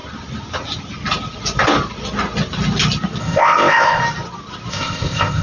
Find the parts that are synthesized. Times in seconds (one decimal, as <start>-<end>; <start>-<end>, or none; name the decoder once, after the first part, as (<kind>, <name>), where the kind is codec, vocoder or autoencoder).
3.2-4.0 (codec, ZipCodec); 4.7-5.4